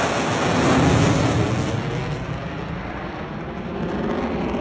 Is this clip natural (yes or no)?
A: yes